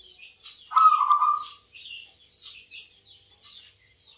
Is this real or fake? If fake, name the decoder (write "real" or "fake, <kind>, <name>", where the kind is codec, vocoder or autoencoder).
real